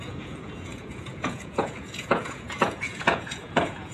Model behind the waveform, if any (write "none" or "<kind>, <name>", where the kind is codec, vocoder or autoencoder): vocoder, Vocos